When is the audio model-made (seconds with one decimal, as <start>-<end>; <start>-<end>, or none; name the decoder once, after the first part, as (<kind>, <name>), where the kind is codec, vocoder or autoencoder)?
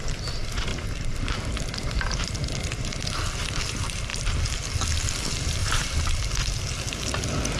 5.6-6.1 (vocoder, BigVGAN v2)